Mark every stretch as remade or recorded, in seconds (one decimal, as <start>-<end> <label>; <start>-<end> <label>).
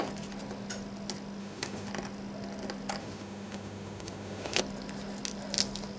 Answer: 0.0-1.4 recorded; 1.4-1.9 remade; 1.9-3.0 recorded; 3.0-4.6 remade; 4.6-6.0 recorded